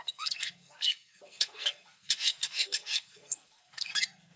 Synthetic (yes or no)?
yes